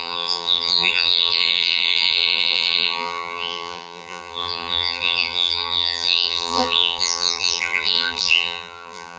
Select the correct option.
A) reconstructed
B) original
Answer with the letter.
A